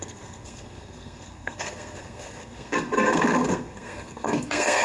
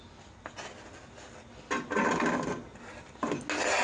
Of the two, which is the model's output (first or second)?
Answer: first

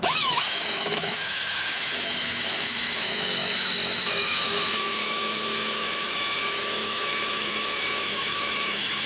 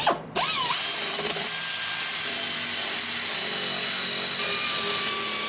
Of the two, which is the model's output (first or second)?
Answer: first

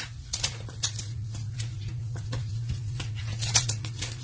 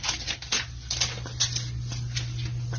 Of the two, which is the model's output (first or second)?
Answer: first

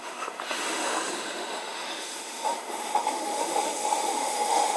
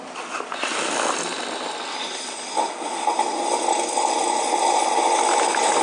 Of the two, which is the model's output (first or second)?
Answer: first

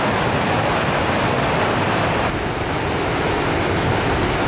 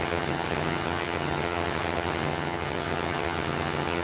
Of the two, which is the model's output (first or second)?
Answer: second